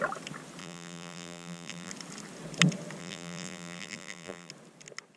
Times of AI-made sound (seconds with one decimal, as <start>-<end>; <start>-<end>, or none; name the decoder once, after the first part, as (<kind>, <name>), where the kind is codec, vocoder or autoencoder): 0.6-1.9 (vocoder, BigVGAN v2); 3.0-4.5